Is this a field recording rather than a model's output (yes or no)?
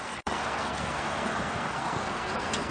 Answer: no